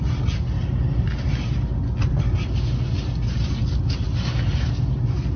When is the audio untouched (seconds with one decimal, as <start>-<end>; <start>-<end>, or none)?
0.0-5.4